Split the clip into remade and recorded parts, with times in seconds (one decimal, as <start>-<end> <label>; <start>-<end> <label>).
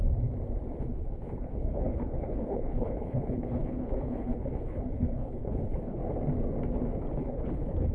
0.0-0.8 recorded; 0.8-6.0 remade; 6.0-7.2 recorded; 7.2-7.9 remade